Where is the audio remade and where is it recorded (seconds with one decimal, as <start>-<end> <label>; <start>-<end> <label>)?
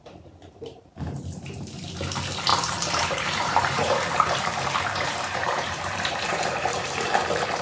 0.0-0.4 recorded; 0.4-1.9 remade; 1.9-2.5 recorded; 2.5-7.1 remade; 7.1-7.6 recorded